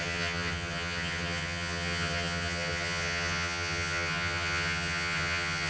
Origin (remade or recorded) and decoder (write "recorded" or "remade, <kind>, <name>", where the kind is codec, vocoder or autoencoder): remade, vocoder, HiFi-GAN